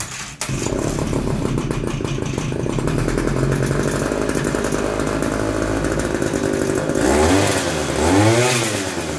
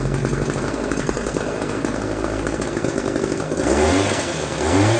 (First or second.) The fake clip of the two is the second